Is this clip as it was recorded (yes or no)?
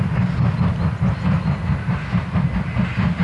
yes